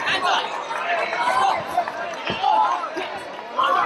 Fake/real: real